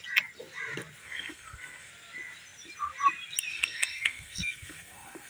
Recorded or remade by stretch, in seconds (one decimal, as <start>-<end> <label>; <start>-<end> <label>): 0.0-1.0 recorded; 1.0-1.9 remade; 1.9-3.5 recorded; 3.5-5.3 remade